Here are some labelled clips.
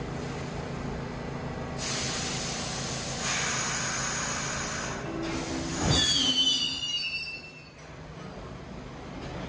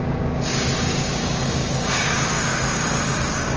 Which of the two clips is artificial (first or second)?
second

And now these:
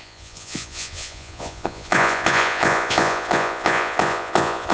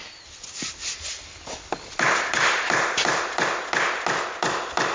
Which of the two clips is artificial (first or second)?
first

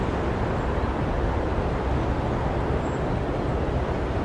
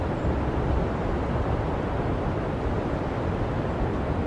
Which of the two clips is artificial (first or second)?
second